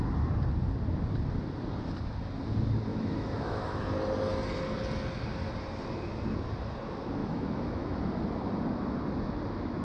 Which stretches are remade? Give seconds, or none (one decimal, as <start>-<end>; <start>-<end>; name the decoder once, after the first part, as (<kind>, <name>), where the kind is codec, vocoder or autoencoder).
2.9-3.8 (autoencoder, DAC-VAE); 7.2-8.0